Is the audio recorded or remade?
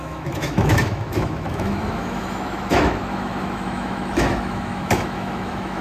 remade